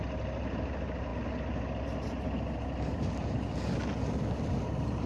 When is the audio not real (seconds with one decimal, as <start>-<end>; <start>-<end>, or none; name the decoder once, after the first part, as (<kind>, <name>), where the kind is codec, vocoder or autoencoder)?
none